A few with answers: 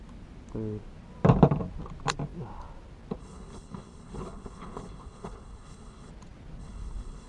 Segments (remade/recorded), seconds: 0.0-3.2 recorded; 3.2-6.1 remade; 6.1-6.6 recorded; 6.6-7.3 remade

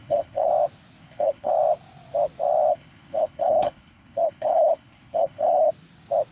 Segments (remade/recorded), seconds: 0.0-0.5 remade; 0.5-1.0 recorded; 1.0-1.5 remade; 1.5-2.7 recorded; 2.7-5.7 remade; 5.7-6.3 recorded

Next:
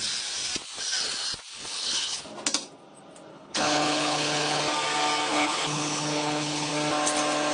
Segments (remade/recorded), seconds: 0.0-1.5 recorded; 1.5-2.2 remade; 2.2-3.3 recorded; 3.3-4.6 remade; 4.6-5.3 recorded; 5.3-6.7 remade; 6.7-7.5 recorded

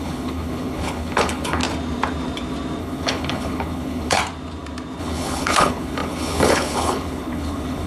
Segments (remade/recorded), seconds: 0.0-1.6 remade; 1.6-2.8 recorded; 2.8-4.2 remade; 4.2-5.0 recorded; 5.0-7.9 remade

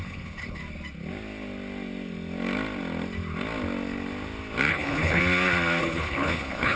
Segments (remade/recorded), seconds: 0.0-0.6 remade; 0.6-4.7 recorded; 4.7-5.2 remade; 5.2-5.8 recorded; 5.8-6.8 remade

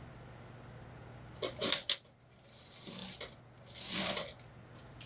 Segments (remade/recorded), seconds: 0.0-5.1 recorded